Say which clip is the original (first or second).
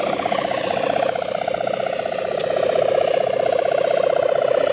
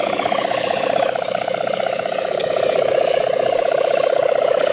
first